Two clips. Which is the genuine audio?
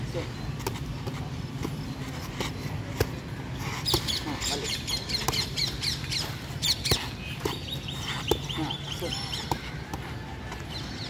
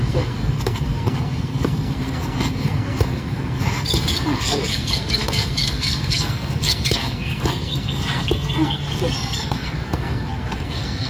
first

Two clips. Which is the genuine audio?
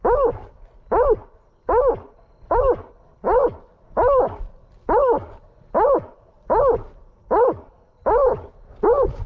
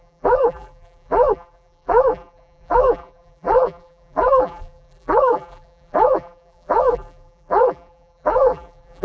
first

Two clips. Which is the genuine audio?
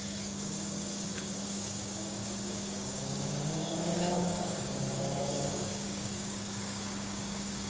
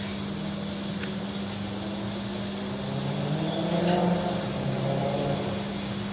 second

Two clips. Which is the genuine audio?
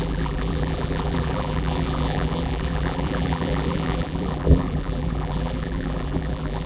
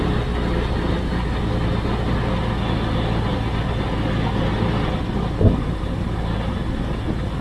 second